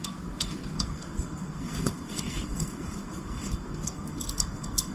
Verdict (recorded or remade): remade